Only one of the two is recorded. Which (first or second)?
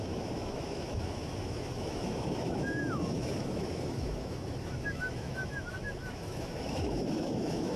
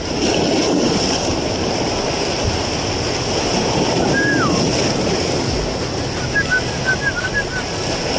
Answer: second